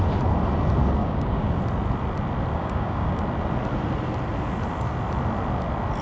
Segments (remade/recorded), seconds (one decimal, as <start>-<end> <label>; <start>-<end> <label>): 0.0-1.0 recorded; 1.0-1.6 remade; 1.6-2.5 recorded; 2.5-3.2 remade; 3.2-6.0 recorded